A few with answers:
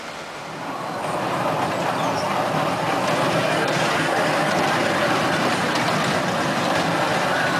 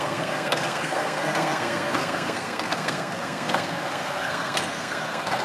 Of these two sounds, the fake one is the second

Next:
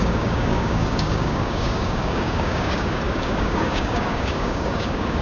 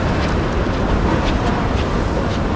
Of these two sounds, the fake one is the first